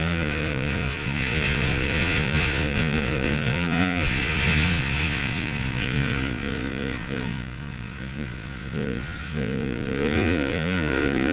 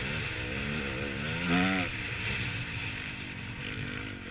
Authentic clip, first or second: second